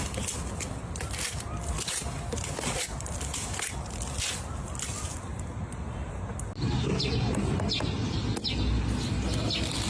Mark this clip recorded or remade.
recorded